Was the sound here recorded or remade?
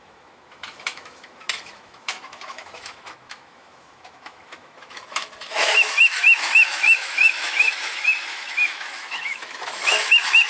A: remade